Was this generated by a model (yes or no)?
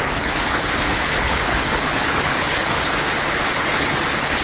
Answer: yes